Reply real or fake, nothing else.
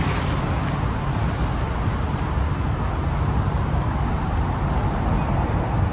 real